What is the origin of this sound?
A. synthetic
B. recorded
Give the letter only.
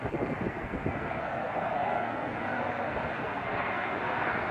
A